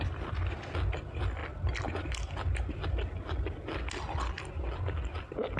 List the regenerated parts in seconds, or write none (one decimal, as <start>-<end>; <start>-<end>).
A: none